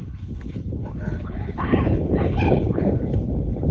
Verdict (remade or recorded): remade